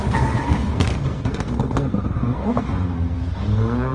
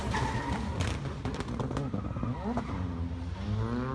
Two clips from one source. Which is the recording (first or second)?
second